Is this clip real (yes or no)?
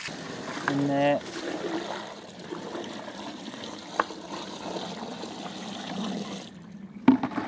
yes